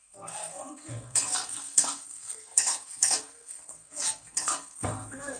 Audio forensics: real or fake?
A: fake